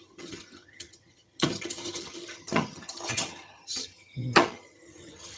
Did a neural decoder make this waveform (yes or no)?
yes